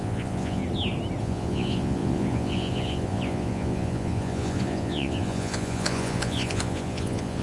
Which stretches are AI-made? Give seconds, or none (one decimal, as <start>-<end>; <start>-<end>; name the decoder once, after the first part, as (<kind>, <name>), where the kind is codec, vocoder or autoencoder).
0.0-0.6 (vocoder, Vocos); 1.2-7.4